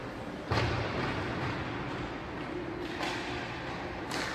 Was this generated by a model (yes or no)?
no